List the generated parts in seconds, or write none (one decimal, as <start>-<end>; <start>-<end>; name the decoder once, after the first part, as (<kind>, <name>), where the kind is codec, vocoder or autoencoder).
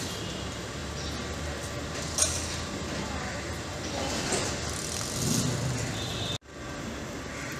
none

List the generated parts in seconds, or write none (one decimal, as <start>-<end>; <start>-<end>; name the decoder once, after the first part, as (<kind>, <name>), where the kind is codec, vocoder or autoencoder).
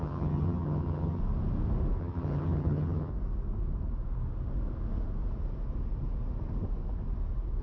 0.0-1.2 (vocoder, HiFi-GAN); 2.0-3.1